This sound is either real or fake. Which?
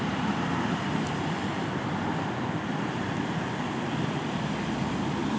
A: fake